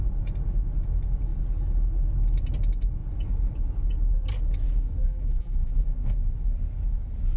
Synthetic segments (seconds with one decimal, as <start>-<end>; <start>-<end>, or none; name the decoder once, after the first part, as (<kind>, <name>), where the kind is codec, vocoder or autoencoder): 5.0-5.8 (vocoder, BigVGAN v2)